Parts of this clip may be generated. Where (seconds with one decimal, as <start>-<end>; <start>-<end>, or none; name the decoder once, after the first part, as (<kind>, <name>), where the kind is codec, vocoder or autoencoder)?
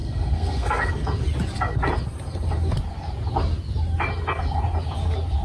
0.0-0.9 (codec, SNAC)